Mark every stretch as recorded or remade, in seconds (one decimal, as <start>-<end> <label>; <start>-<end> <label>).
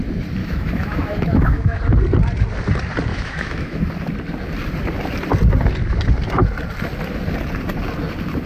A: 0.0-0.4 recorded; 0.4-1.8 remade; 1.8-3.1 recorded; 3.1-3.9 remade; 3.9-8.5 recorded